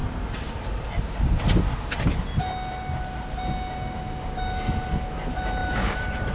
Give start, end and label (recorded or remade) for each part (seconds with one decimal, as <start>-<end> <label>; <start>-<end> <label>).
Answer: 0.0-5.6 recorded; 5.6-6.3 remade